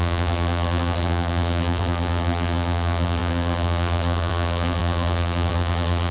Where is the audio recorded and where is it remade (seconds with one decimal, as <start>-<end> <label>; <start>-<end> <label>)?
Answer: 0.0-6.1 remade